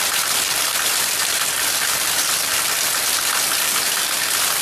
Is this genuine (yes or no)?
no